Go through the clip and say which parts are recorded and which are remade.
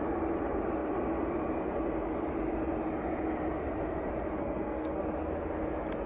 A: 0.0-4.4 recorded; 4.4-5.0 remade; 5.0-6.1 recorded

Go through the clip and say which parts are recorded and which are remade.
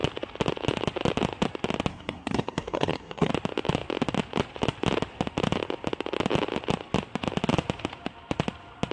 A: 0.0-1.9 recorded; 1.9-3.3 remade; 3.3-8.9 recorded